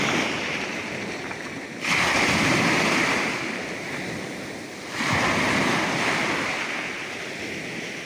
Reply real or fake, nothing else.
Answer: real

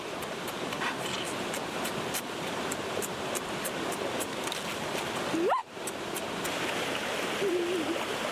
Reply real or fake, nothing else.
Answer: real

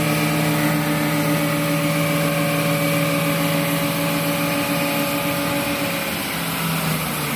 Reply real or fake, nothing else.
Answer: real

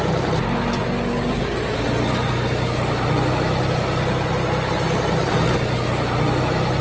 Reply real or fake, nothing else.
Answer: real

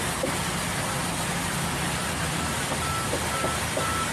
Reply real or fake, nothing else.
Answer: real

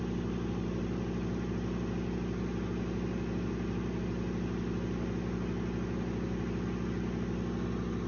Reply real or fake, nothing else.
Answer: real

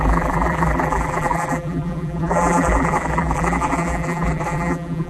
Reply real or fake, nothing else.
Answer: fake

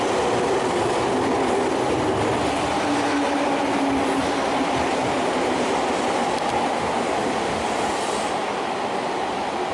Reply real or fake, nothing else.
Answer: real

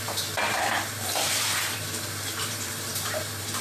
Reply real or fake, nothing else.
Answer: fake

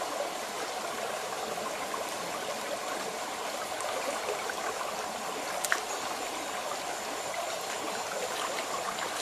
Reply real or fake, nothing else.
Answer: real